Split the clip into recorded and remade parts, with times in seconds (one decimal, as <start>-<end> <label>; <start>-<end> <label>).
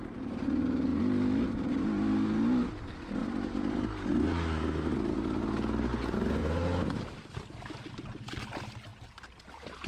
0.0-9.9 recorded